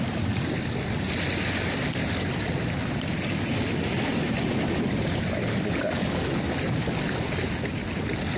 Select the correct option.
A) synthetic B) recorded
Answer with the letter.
B